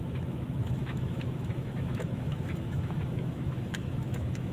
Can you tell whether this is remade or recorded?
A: remade